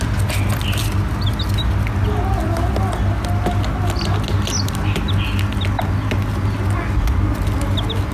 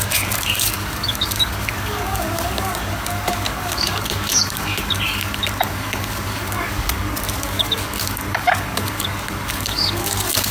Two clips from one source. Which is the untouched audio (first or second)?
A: first